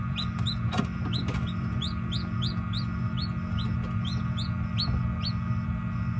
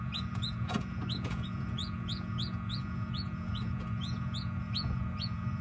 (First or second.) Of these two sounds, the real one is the first